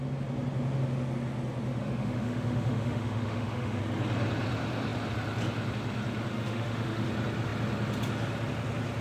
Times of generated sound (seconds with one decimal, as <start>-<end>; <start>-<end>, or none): 1.8-3.8; 6.3-7.1